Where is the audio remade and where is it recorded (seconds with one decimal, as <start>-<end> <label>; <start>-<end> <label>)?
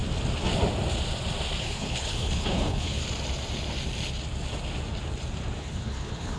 0.0-1.6 recorded; 1.6-3.0 remade; 3.0-5.6 recorded; 5.6-6.4 remade